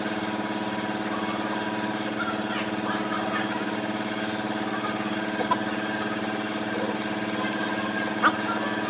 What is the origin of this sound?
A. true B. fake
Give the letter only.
A